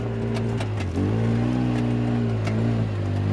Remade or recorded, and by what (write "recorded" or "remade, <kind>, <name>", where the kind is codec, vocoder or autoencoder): recorded